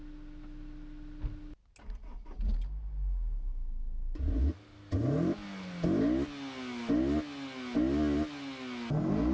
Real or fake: real